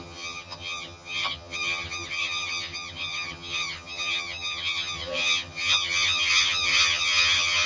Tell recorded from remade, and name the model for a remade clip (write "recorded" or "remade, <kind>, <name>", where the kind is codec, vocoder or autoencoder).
remade, vocoder, HiFi-GAN